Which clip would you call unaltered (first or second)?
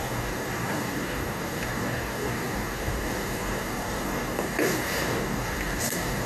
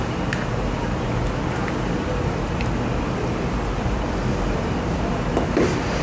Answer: second